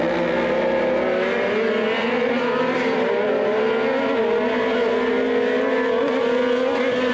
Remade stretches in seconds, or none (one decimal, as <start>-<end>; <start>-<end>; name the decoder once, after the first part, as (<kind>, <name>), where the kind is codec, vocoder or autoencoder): 2.0-3.3 (vocoder, BigVGAN v2)